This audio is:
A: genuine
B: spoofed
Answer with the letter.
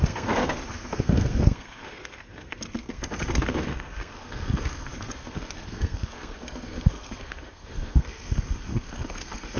B